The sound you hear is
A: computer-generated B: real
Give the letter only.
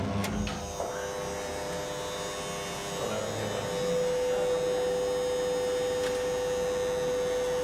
B